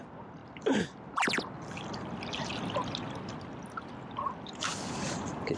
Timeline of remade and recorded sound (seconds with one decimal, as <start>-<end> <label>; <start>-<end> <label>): 0.0-5.6 recorded